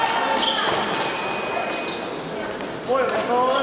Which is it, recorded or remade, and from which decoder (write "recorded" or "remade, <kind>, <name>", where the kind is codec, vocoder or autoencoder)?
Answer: recorded